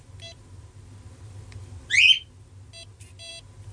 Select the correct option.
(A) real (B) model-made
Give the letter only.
A